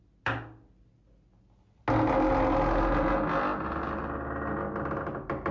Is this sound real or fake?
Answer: real